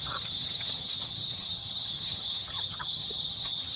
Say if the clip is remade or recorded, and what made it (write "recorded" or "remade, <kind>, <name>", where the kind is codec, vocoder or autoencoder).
remade, vocoder, HiFi-GAN